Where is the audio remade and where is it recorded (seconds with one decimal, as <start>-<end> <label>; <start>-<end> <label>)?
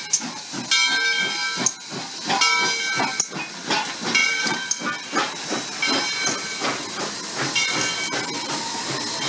0.0-4.2 recorded; 4.2-5.1 remade; 5.1-9.3 recorded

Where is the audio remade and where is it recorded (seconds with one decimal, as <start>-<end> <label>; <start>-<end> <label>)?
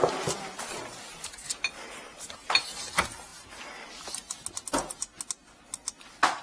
0.0-6.4 recorded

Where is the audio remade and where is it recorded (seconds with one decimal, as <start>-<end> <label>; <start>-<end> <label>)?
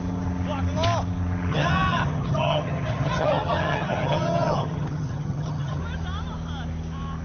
0.0-1.5 recorded; 1.5-5.8 remade; 5.8-7.2 recorded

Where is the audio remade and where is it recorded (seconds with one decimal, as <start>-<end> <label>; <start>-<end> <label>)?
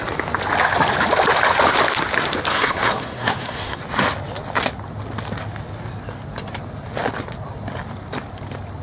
0.0-2.5 recorded; 2.5-3.8 remade; 3.8-8.8 recorded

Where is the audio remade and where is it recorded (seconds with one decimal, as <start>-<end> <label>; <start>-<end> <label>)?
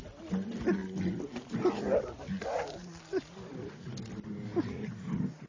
0.0-5.5 recorded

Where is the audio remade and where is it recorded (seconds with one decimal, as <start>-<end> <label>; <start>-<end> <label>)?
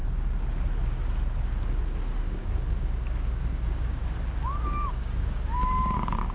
0.0-2.0 recorded; 2.0-4.0 remade; 4.0-4.7 recorded; 4.7-6.3 remade